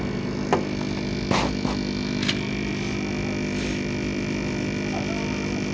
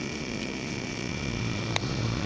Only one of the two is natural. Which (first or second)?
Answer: first